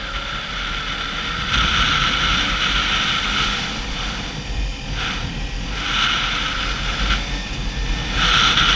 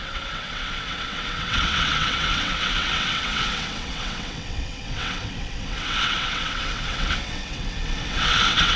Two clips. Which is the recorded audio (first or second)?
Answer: first